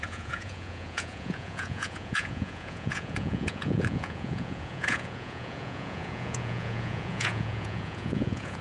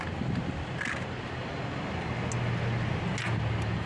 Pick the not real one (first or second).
first